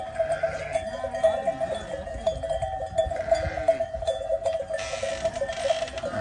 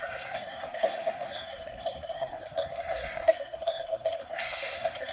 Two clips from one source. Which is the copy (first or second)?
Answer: second